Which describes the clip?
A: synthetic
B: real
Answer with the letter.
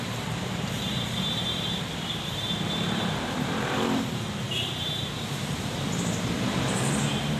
A